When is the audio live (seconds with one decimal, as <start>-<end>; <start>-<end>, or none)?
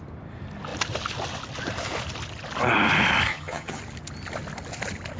0.0-3.3; 3.8-5.2